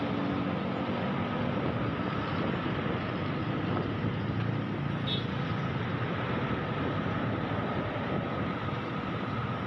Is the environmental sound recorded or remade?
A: recorded